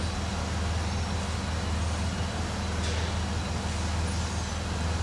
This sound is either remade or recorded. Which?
recorded